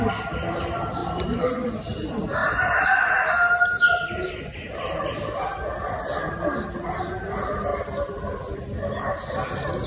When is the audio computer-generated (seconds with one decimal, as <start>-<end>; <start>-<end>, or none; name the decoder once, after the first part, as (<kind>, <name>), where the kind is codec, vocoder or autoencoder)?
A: none